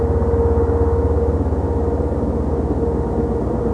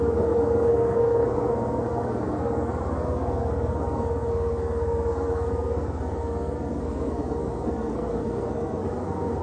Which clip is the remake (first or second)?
second